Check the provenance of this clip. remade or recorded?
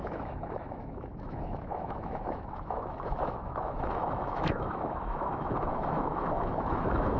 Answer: remade